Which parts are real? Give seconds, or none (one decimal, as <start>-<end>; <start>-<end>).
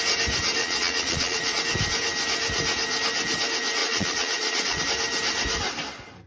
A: 0.0-0.6; 1.6-3.8; 4.8-6.3